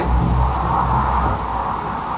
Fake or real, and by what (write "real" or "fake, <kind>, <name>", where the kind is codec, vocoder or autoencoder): real